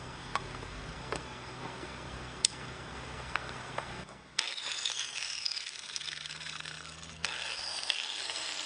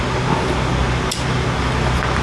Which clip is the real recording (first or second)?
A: second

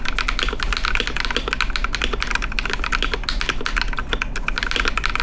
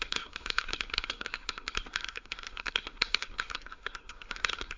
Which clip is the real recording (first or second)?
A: first